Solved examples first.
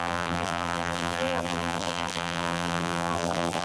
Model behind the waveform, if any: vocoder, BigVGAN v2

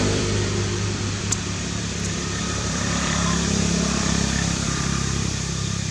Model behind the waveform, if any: vocoder, BigVGAN v2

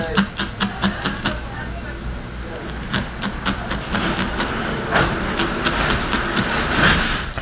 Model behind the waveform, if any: none